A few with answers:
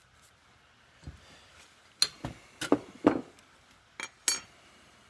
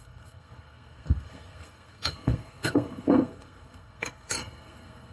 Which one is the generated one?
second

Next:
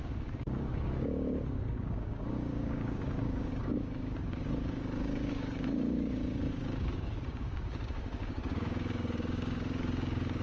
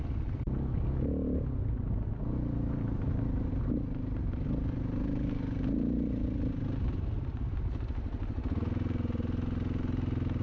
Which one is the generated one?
first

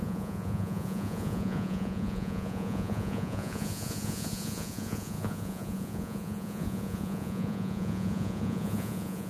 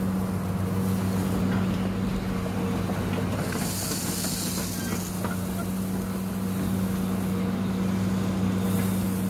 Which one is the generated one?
first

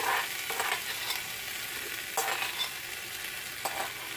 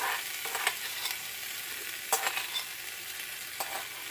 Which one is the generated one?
second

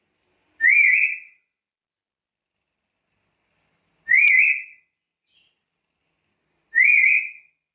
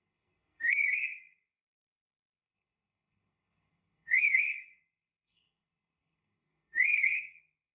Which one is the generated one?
second